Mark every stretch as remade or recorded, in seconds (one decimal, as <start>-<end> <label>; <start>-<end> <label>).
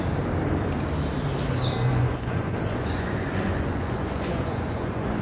0.0-1.9 recorded; 1.9-5.2 remade